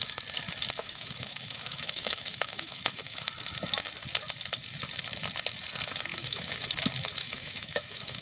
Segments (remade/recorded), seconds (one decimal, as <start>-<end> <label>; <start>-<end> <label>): 0.0-0.8 recorded; 0.8-3.3 remade; 3.3-6.1 recorded; 6.1-6.6 remade; 6.6-7.2 recorded; 7.2-8.2 remade